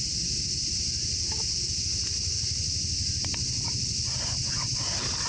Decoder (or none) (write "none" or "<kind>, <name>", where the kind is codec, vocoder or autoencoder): none